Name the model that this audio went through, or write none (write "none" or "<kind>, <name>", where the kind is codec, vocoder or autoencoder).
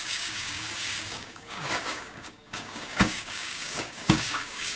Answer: codec, DAC